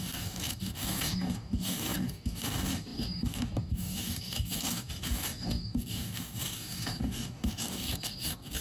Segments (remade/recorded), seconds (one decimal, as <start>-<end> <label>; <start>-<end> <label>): 0.0-8.6 remade